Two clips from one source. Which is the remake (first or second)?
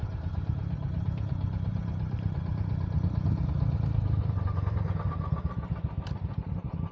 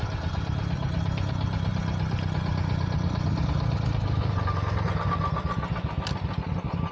first